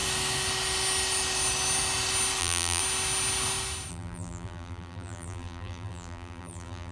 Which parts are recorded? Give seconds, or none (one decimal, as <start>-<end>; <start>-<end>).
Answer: 0.0-2.4; 2.8-3.9